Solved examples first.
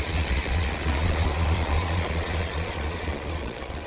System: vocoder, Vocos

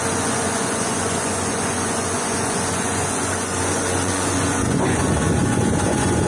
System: vocoder, Vocos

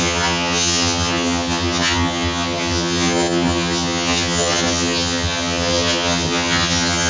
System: vocoder, HiFi-GAN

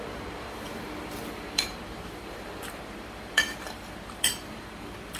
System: vocoder, BigVGAN v2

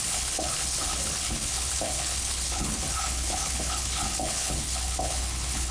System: codec, HILCodec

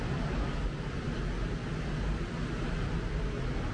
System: none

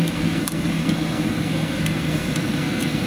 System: codec, SNAC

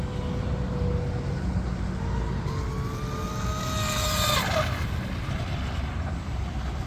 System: none